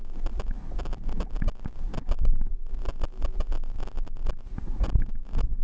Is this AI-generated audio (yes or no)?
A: no